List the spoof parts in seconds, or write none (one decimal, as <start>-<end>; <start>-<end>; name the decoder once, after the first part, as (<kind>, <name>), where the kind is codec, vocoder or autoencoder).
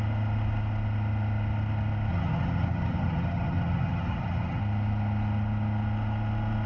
2.1-4.6 (vocoder, HiFi-GAN)